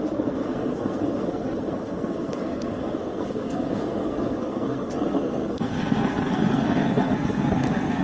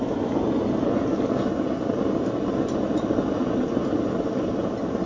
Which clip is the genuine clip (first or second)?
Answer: second